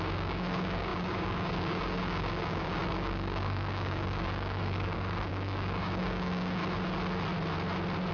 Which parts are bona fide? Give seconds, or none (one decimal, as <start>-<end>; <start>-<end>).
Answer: 6.6-8.1